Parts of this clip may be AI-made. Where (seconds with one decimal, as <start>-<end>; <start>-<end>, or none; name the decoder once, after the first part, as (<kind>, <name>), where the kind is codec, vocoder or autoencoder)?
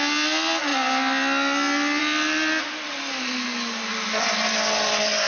none